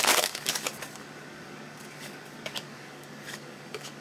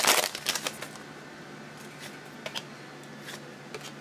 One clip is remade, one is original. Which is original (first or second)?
second